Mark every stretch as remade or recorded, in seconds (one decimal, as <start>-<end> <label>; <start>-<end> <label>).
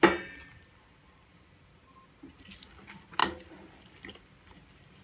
0.0-5.0 recorded